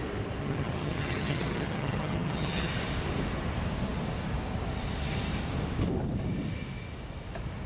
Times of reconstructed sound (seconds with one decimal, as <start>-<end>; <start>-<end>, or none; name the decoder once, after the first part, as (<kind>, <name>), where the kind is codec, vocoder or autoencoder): 0.4-2.7 (vocoder, HiFi-GAN)